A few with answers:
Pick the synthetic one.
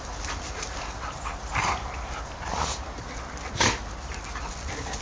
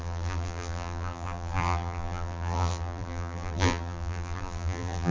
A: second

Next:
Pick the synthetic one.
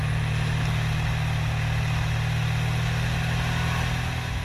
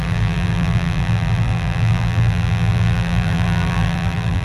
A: second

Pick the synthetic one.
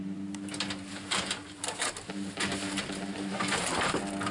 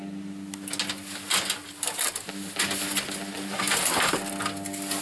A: first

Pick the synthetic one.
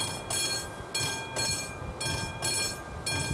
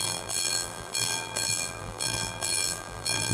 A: second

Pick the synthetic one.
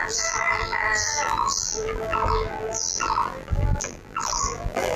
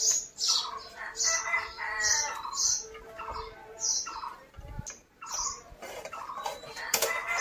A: first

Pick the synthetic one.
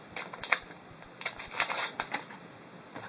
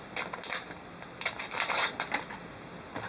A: first